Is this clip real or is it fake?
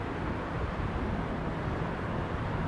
real